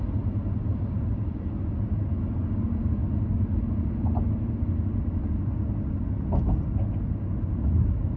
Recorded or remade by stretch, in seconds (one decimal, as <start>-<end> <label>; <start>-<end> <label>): 0.0-8.2 recorded